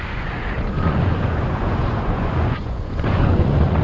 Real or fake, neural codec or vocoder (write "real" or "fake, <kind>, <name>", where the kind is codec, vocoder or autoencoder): fake, vocoder, Vocos